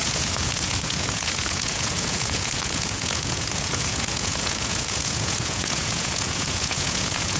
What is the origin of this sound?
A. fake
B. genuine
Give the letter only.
A